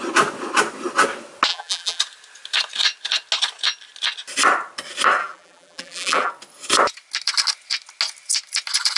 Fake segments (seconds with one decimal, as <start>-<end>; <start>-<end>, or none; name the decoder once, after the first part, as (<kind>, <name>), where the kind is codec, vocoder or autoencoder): 1.5-2.0 (vocoder, BigVGAN v2); 5.2-6.3

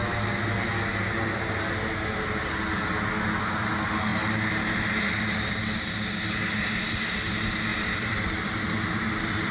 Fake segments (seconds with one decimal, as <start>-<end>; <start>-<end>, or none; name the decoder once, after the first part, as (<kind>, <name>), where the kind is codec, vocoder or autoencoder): 7.7-9.5 (vocoder, BigVGAN v2)

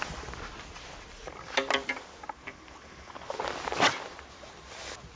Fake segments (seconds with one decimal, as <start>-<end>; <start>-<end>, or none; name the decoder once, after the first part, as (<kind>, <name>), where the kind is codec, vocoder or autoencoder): none

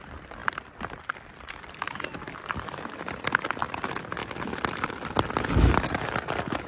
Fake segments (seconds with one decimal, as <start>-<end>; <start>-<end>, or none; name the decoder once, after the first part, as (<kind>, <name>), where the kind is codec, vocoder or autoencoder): 0.0-4.2 (vocoder, BigVGAN v2); 4.8-6.7

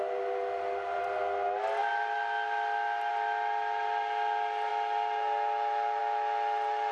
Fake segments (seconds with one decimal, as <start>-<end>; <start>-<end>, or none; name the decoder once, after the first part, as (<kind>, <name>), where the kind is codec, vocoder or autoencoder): none